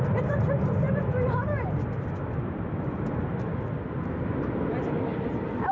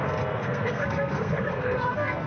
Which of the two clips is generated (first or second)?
second